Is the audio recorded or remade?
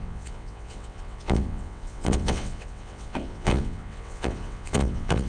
remade